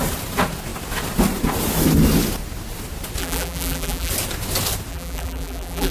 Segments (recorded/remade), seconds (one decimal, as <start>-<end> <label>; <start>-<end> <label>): 0.0-3.2 recorded; 3.2-4.1 remade; 4.1-4.9 recorded; 4.9-5.9 remade